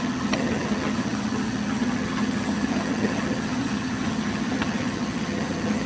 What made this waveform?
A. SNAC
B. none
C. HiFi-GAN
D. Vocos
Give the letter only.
C